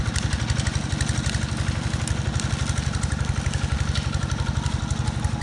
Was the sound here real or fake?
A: real